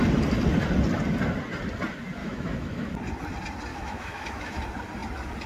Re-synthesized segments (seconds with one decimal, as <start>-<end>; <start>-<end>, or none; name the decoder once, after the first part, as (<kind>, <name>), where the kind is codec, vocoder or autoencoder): 2.2-2.9 (autoencoder, DAC-VAE); 3.7-4.6